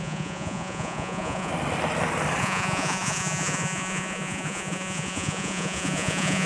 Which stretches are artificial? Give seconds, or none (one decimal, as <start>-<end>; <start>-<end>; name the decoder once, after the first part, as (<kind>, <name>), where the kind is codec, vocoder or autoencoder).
0.0-1.5 (vocoder, Vocos); 2.4-6.5